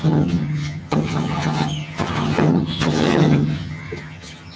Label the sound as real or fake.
fake